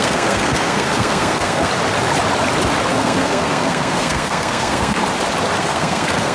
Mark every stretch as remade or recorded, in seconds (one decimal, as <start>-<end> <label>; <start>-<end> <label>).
0.0-1.7 remade; 1.7-2.9 recorded; 2.9-5.0 remade; 5.0-5.6 recorded; 5.6-6.3 remade